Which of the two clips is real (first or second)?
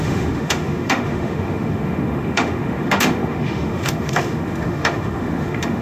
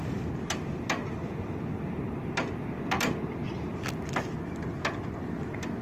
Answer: second